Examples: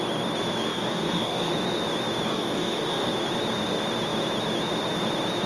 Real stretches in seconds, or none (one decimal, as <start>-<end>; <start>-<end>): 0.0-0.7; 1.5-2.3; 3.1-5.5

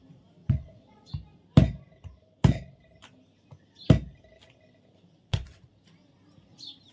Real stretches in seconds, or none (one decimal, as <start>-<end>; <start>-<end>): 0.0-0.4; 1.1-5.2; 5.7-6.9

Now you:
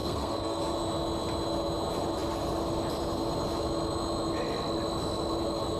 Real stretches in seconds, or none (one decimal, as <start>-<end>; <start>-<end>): 0.6-5.8